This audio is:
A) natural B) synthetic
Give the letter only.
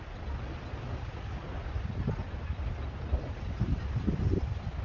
A